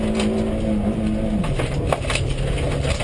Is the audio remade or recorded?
recorded